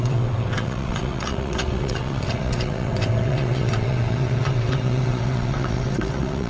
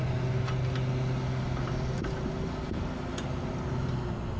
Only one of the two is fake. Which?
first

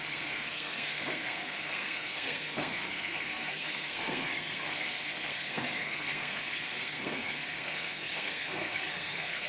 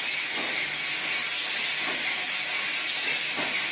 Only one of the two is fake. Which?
first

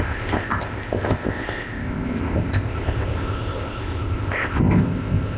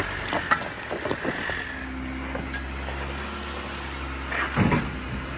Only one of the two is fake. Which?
first